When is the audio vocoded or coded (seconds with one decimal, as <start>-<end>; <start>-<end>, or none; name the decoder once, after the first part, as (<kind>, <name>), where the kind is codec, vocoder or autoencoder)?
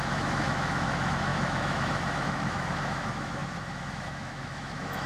0.0-5.1 (autoencoder, DAC-VAE)